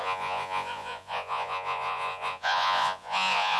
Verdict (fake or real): fake